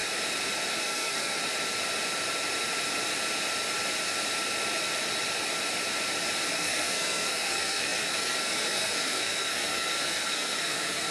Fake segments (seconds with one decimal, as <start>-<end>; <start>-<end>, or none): 0.8-1.4; 6.5-11.1